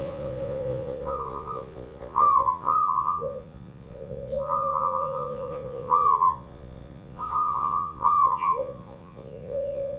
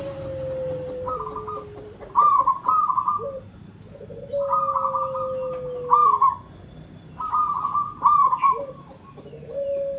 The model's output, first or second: first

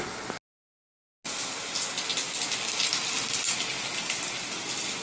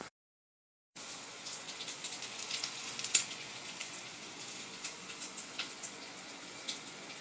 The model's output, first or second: second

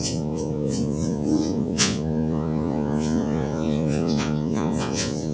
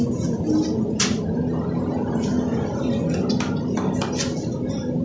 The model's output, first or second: first